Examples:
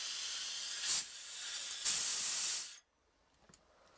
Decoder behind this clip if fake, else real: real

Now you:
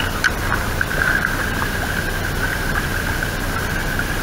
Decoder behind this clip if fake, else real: fake, vocoder, BigVGAN v2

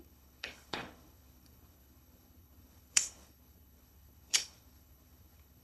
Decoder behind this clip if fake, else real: fake, codec, HILCodec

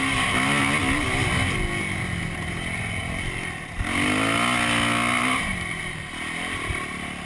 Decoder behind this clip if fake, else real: real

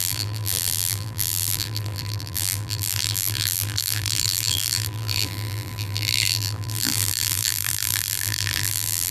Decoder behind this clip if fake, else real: fake, vocoder, BigVGAN v2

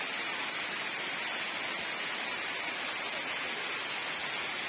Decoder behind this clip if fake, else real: real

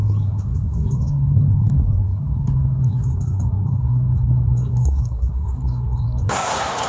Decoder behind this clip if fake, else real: fake, codec, SNAC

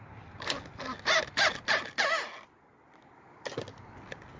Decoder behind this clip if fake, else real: real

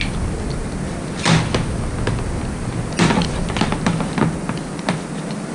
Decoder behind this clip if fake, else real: real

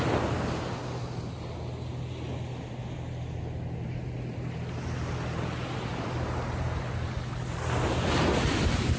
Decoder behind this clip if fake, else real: real